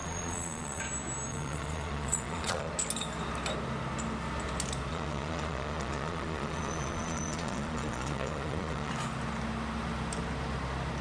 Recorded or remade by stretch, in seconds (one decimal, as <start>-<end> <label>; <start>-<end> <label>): 0.0-0.8 remade; 0.8-1.3 recorded; 1.3-2.7 remade; 2.7-4.9 recorded; 4.9-8.9 remade; 8.9-11.0 recorded